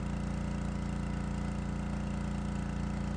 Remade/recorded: recorded